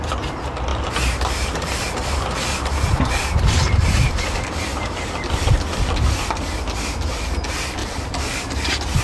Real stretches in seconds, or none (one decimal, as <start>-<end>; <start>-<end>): 0.0-0.7; 4.1-4.7; 5.3-7.8